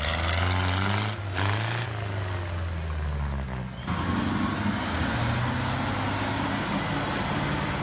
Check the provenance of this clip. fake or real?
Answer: real